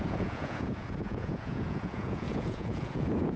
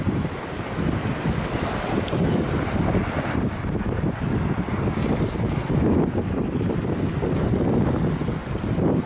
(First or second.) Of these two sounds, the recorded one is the second